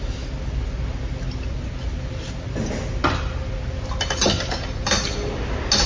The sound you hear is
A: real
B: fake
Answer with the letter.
A